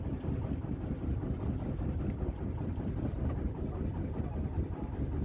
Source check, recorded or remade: recorded